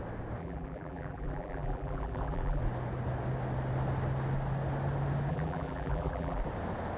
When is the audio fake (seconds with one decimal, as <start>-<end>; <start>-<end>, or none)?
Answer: 0.4-2.6; 5.3-6.4